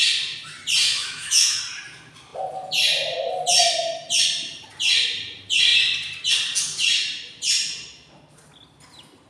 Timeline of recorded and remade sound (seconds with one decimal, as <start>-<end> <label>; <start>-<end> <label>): 0.0-0.8 recorded; 0.8-1.6 remade; 1.6-9.3 recorded